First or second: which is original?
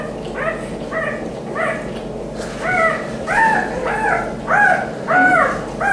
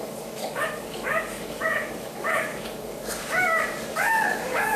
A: first